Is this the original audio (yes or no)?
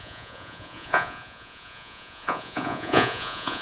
no